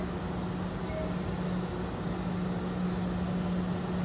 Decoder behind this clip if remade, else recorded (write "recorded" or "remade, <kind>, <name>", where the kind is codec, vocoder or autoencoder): recorded